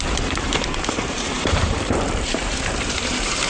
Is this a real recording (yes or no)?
no